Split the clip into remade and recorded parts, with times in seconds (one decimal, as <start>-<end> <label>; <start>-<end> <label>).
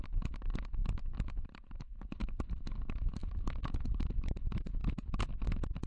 0.0-0.8 recorded; 0.8-1.5 remade; 1.5-3.2 recorded; 3.2-3.9 remade; 3.9-5.9 recorded